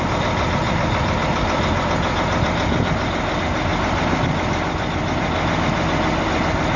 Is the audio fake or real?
real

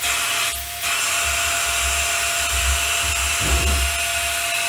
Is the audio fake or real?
real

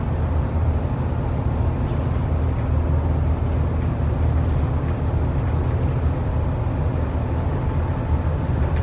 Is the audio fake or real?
real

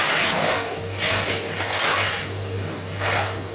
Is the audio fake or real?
fake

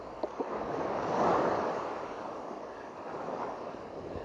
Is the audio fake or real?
fake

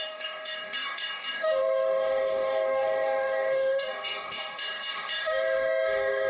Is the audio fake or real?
fake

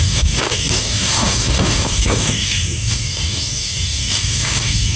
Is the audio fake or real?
fake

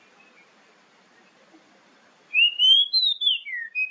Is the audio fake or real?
real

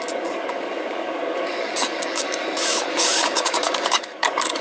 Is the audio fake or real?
fake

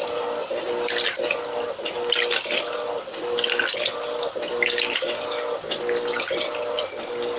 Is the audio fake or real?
real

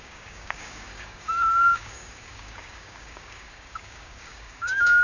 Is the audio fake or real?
fake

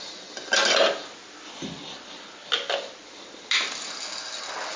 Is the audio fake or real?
real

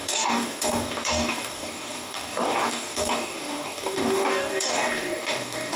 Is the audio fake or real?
fake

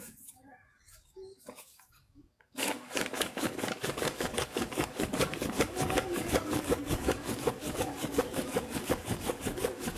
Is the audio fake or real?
fake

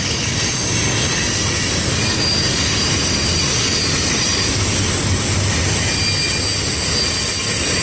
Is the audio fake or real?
real